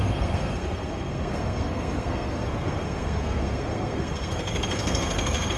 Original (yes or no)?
no